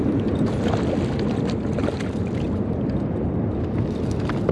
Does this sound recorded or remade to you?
recorded